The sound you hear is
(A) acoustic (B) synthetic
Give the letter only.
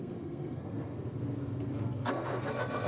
B